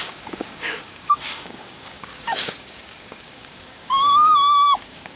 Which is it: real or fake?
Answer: fake